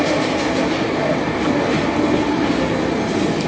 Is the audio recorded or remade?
recorded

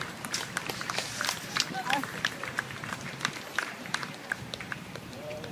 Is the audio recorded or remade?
remade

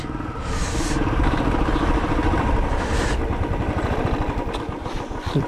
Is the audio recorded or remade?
remade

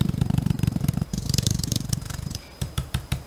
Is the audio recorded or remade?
remade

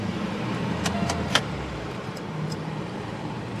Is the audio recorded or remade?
remade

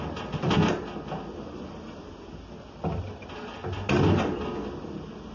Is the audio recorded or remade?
recorded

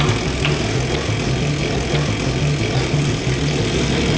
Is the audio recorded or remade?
recorded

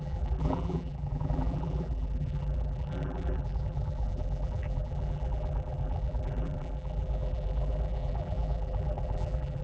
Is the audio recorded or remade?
remade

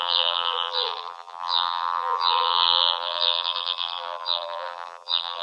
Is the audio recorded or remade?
remade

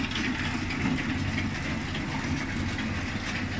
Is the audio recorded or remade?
recorded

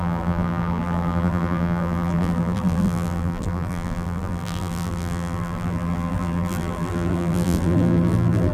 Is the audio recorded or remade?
remade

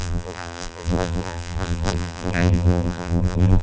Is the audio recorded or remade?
remade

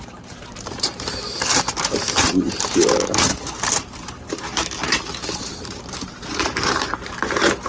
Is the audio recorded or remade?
remade